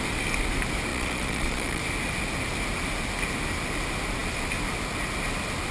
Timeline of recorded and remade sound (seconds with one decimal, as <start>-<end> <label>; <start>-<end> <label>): 0.0-0.9 recorded; 0.9-1.8 remade; 1.8-5.7 recorded